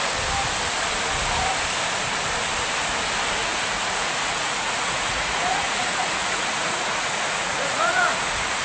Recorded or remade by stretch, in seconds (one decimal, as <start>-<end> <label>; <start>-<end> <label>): 0.0-3.4 recorded; 3.4-8.6 remade